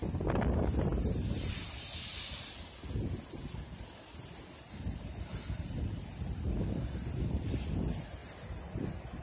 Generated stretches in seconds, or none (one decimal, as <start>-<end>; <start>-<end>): 0.0-2.1; 6.7-8.2